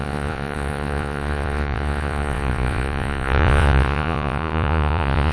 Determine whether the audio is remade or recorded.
remade